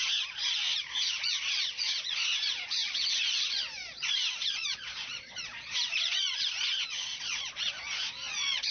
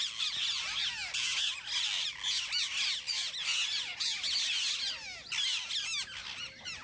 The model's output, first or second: first